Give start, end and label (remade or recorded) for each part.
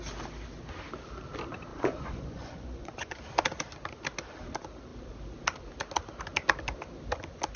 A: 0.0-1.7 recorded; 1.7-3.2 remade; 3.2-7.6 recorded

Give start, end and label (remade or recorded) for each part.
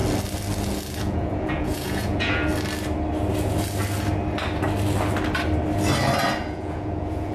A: 0.0-1.0 recorded; 1.0-2.5 remade; 2.5-6.4 recorded; 6.4-7.3 remade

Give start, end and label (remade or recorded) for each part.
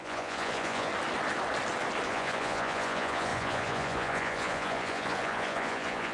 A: 0.0-0.9 remade; 0.9-2.1 recorded; 2.1-6.1 remade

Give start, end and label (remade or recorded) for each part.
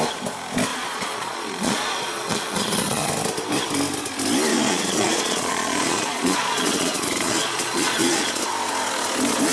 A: 0.0-0.7 recorded; 0.7-3.1 remade; 3.1-4.5 recorded; 4.5-8.4 remade; 8.4-9.5 recorded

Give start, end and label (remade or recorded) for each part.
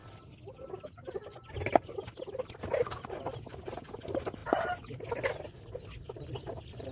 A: 0.0-6.9 recorded